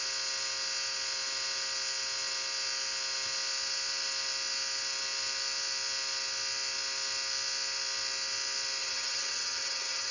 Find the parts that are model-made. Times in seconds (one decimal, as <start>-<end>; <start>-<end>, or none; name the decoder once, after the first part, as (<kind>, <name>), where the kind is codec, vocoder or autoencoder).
8.8-10.1 (vocoder, HiFi-GAN)